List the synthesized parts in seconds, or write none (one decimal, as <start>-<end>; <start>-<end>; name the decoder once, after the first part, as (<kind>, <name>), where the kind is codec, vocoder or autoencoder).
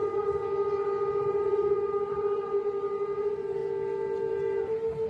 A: 0.0-0.4 (vocoder, BigVGAN v2); 1.2-3.6; 4.3-5.1